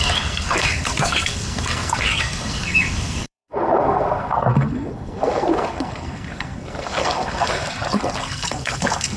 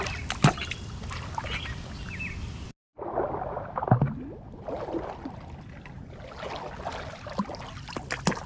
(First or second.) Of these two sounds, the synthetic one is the first